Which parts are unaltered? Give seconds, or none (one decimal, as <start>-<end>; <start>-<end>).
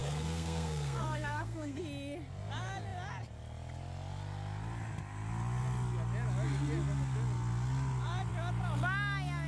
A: 1.8-9.5